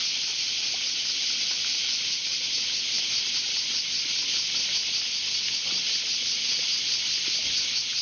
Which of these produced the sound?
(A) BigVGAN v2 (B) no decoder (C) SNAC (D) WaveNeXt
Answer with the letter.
B